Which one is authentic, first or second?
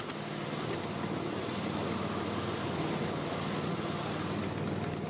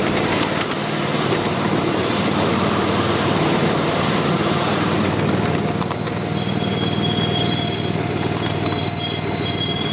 first